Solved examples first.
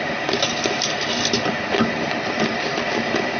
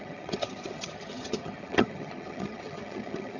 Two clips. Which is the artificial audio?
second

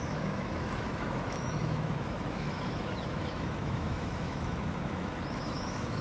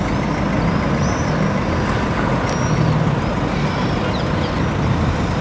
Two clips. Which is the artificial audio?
first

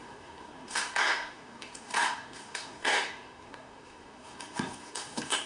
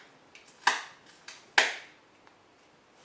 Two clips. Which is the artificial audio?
first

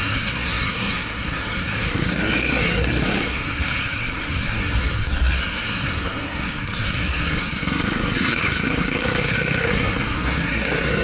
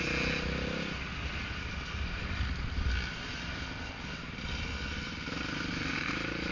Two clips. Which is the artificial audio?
first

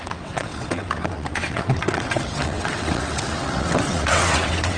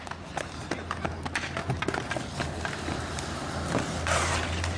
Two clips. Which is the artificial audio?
first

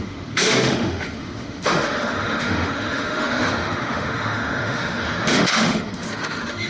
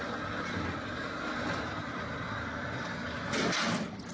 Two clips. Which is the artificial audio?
first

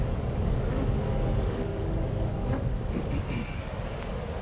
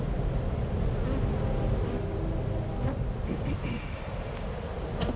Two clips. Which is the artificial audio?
first